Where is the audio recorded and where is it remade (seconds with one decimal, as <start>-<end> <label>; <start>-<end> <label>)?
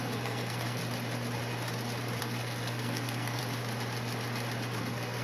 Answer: 0.0-0.8 remade; 0.8-2.2 recorded; 2.2-3.4 remade; 3.4-4.8 recorded; 4.8-5.2 remade